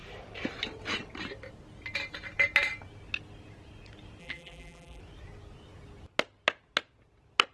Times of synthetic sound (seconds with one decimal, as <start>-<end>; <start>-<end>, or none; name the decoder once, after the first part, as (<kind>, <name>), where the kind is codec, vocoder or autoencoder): 4.2-5.0 (vocoder, BigVGAN v2)